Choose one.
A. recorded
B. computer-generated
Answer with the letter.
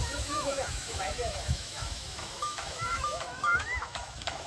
B